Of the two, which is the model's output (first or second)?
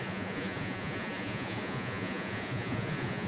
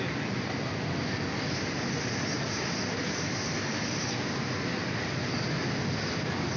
first